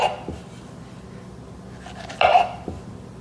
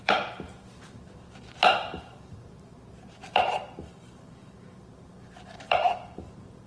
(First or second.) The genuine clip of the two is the first